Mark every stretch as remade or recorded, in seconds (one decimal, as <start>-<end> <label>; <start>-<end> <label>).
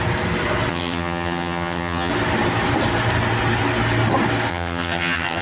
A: 0.0-0.7 recorded; 0.7-2.1 remade; 2.1-4.5 recorded; 4.5-5.4 remade